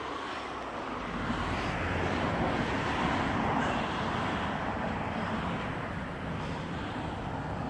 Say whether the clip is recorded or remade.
recorded